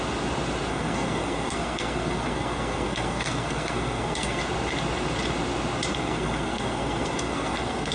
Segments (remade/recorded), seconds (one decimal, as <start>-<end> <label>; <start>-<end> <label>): 0.0-0.7 recorded; 0.7-4.4 remade; 4.4-5.9 recorded; 5.9-7.9 remade